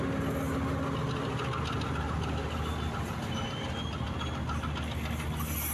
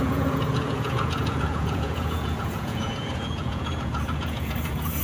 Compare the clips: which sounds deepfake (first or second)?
second